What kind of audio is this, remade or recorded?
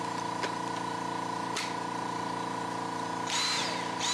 recorded